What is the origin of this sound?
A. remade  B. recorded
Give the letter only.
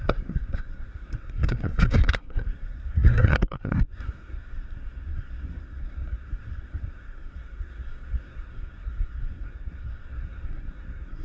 A